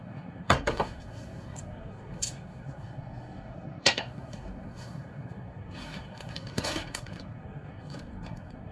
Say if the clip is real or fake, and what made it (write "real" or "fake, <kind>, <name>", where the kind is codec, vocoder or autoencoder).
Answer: fake, codec, SNAC